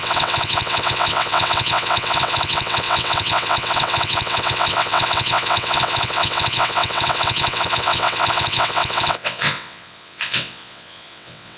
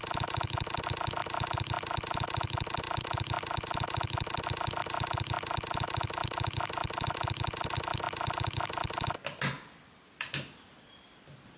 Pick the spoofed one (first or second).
first